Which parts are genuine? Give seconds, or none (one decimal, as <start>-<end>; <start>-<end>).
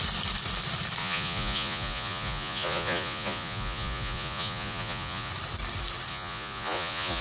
0.0-1.0; 5.3-6.1